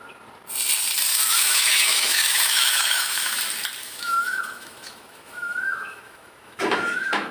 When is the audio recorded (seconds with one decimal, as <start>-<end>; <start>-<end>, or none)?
0.0-1.1; 3.4-3.8